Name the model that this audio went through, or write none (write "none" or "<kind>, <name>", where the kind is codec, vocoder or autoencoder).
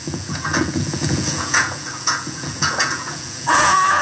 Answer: vocoder, Vocos